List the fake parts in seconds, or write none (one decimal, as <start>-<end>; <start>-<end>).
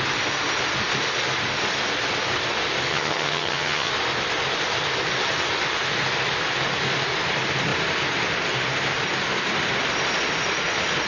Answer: 2.9-3.9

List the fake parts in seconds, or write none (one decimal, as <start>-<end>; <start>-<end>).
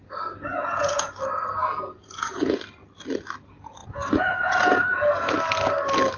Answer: 0.5-1.1; 1.6-2.6; 3.8-5.3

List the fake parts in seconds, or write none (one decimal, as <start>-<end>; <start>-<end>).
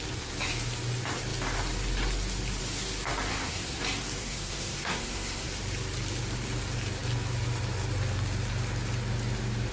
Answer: 3.3-3.8; 4.2-5.5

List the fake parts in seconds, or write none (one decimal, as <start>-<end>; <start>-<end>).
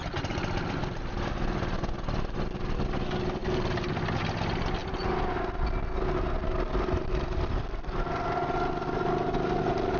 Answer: 3.4-3.9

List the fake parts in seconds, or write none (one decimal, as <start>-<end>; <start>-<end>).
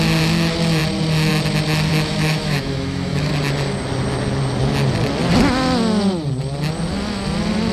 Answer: 1.9-3.3